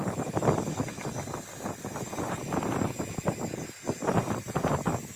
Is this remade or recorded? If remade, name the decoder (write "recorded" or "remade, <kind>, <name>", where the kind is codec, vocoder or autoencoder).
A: recorded